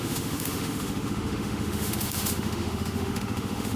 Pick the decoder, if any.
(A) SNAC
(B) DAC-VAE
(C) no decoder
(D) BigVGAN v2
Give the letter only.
B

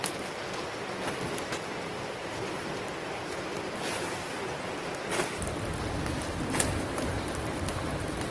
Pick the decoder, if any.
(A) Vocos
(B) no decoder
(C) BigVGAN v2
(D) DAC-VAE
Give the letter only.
B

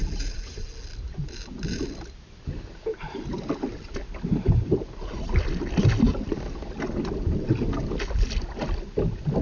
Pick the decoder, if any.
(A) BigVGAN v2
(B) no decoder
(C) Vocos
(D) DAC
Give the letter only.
B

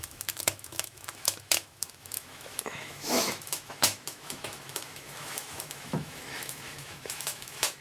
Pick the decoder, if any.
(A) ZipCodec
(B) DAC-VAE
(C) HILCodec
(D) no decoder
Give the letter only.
B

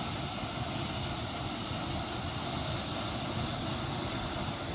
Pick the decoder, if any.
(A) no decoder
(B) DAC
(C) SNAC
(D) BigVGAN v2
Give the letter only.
A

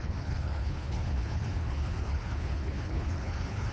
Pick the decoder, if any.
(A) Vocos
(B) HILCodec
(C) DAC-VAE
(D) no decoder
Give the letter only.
B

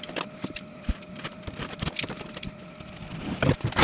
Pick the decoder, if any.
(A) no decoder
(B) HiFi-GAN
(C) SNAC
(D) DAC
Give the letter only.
A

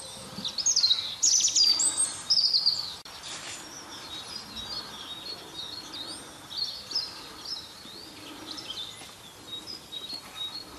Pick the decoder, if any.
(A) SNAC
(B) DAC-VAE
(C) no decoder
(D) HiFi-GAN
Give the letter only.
C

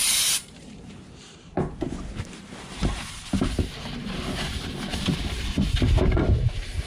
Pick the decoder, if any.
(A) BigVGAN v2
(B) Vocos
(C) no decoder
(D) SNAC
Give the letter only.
A